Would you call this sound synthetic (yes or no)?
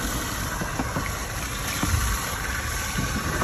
no